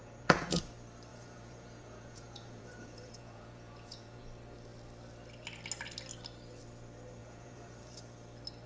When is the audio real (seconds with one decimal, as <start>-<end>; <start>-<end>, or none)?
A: 0.6-1.1; 4.2-7.2; 7.9-8.7